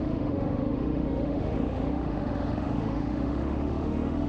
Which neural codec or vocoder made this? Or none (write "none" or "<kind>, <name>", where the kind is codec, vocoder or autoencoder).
autoencoder, DAC-VAE